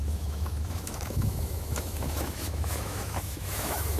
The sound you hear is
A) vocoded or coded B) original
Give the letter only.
A